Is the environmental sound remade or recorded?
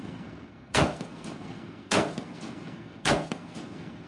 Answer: remade